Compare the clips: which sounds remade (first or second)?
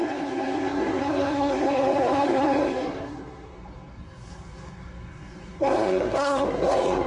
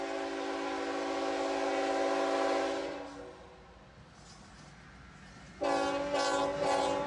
first